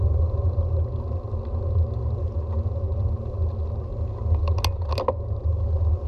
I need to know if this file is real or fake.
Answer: real